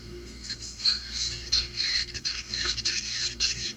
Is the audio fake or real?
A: fake